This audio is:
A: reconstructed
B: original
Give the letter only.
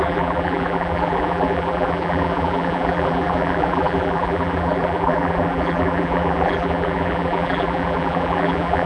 A